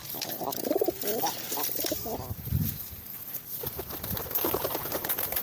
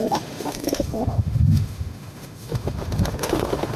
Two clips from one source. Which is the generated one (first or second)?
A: second